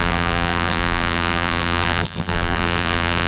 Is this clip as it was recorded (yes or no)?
no